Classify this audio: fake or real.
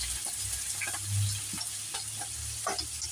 real